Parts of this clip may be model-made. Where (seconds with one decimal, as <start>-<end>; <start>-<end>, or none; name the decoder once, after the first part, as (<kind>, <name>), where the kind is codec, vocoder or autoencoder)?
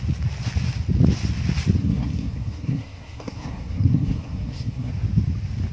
1.8-4.9 (codec, SNAC)